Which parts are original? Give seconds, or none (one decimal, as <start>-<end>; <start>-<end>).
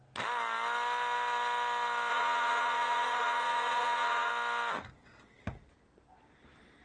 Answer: 0.0-2.1; 4.3-6.8